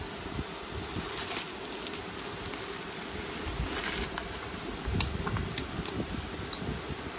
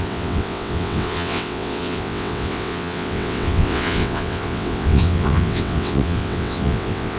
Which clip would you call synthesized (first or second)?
second